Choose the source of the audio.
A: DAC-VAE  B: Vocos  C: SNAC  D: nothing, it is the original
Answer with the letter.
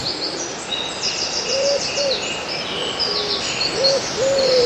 D